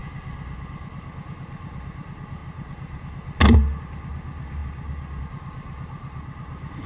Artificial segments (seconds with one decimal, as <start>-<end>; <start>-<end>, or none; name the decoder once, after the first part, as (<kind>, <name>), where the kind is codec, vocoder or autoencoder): none